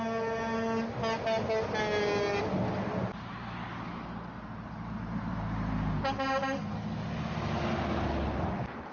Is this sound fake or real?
real